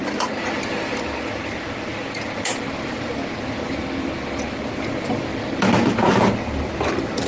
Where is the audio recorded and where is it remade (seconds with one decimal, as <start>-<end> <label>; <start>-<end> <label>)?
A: 0.0-7.3 recorded